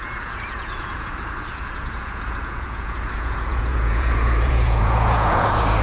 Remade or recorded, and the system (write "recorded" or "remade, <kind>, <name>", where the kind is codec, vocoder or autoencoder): remade, vocoder, Vocos